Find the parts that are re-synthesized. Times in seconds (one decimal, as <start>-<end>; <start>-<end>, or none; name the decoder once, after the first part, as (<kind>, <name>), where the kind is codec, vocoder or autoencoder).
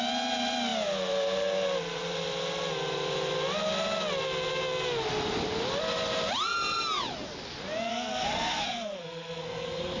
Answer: 7.9-10.0 (codec, SNAC)